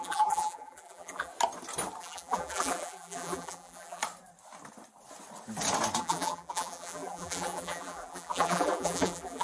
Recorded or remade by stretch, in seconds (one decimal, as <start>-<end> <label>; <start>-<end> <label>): 0.0-1.3 remade; 1.3-2.0 recorded; 2.0-4.0 remade; 4.0-6.0 recorded; 6.0-9.4 remade